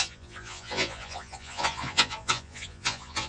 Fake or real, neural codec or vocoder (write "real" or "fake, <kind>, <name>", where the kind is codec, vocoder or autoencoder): fake, vocoder, Vocos